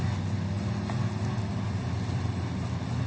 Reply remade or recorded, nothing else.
recorded